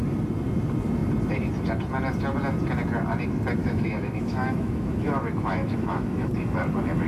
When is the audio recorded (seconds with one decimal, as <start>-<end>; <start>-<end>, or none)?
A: 0.0-3.6; 6.3-7.1